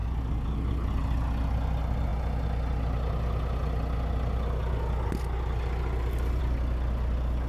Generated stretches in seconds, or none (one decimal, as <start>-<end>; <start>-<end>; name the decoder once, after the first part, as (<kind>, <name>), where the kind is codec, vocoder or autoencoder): none